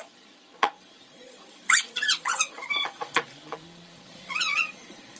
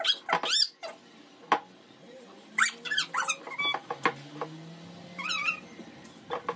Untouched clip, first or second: second